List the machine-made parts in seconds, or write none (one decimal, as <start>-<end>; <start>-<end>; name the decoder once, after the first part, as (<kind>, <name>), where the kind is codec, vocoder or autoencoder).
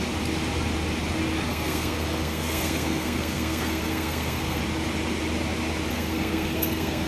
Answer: 1.5-4.6 (codec, SNAC); 5.9-7.1